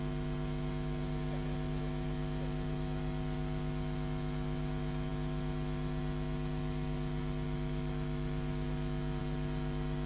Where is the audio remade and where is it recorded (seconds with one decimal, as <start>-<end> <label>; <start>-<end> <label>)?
0.0-10.1 recorded